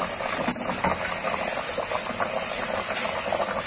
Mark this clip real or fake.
real